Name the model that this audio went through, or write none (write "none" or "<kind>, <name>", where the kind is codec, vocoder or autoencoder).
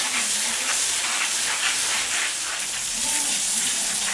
vocoder, BigVGAN v2